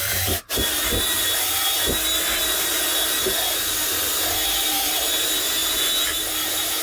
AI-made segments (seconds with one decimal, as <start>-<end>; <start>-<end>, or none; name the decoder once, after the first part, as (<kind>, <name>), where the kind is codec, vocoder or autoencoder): none